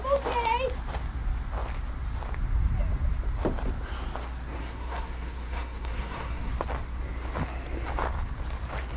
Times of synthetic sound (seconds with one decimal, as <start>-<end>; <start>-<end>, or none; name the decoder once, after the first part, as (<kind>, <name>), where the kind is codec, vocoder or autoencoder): 4.6-6.5 (codec, SNAC)